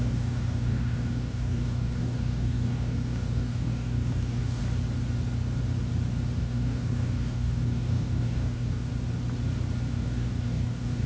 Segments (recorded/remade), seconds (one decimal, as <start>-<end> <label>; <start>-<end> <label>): 0.0-4.6 remade; 4.6-6.4 recorded; 6.4-8.9 remade; 8.9-9.9 recorded; 9.9-11.1 remade